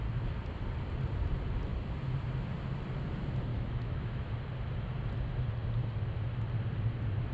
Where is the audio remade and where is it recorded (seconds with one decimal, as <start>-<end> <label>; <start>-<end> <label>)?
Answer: 0.0-3.5 recorded; 3.5-4.3 remade; 4.3-7.3 recorded